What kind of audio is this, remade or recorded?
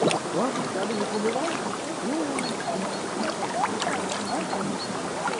recorded